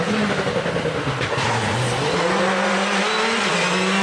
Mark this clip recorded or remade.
recorded